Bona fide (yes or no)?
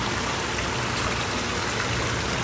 yes